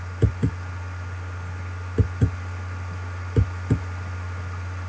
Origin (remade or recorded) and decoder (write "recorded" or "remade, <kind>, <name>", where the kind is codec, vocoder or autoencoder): recorded